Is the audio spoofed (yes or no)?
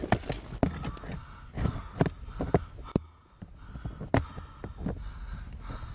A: no